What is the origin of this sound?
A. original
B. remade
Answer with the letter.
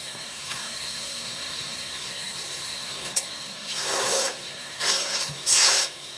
B